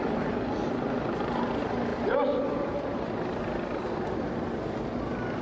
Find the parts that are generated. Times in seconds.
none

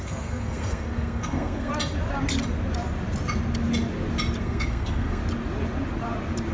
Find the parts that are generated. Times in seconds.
0.0-1.7 (codec, SNAC); 4.4-5.2

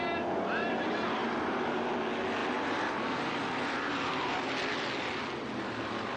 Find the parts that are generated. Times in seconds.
1.2-1.9 (vocoder, BigVGAN v2); 2.4-4.4

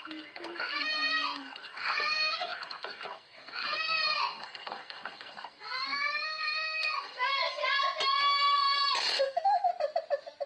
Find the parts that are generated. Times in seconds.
0.0-7.6 (codec, SNAC); 9.0-9.7

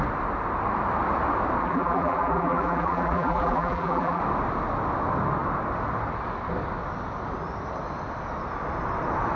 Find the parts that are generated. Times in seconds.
1.6-4.2 (vocoder, BigVGAN v2)

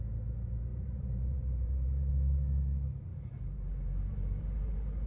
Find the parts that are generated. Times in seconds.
0.7-2.1 (vocoder, BigVGAN v2); 3.1-5.1

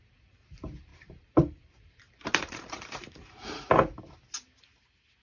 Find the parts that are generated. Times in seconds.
0.9-4.0 (vocoder, BigVGAN v2)